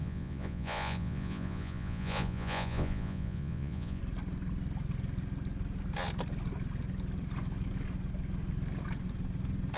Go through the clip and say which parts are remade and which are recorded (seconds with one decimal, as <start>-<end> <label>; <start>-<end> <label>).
0.0-4.0 remade; 4.0-9.8 recorded